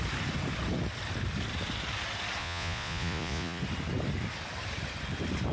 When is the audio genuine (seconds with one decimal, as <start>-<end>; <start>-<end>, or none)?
0.0-2.4; 3.6-5.5